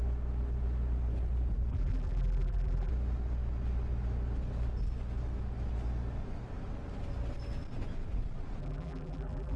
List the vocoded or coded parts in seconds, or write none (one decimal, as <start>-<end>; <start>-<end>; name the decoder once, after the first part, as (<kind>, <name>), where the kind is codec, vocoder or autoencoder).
1.7-2.9 (vocoder, BigVGAN v2); 8.6-9.6